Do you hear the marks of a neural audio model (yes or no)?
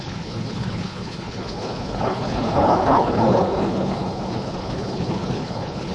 yes